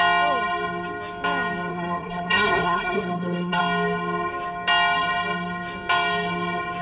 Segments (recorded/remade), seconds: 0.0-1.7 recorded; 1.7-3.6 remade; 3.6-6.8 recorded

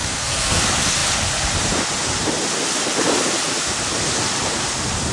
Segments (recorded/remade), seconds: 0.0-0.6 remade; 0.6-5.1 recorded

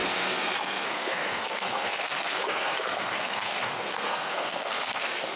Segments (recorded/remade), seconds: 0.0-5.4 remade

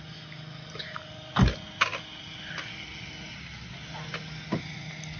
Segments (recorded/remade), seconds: 0.0-5.2 recorded

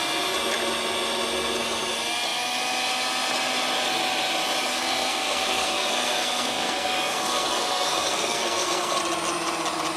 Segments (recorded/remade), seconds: 0.0-4.7 recorded; 4.7-9.0 remade; 9.0-10.0 recorded